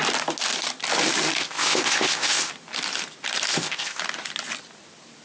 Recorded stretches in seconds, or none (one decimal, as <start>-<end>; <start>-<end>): 0.0-1.4; 2.5-3.5; 4.0-5.2